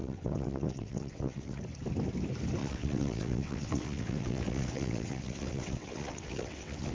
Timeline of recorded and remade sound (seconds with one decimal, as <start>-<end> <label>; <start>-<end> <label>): 0.0-1.6 remade; 1.6-2.6 recorded; 2.6-6.9 remade